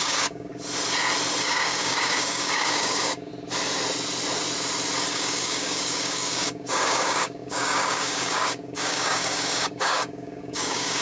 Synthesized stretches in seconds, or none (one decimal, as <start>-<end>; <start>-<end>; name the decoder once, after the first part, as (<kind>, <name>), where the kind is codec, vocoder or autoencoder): 0.0-0.5 (codec, DAC); 1.4-3.3; 5.1-11.0